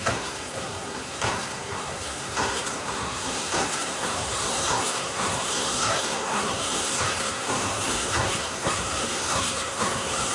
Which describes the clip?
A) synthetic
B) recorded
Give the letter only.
A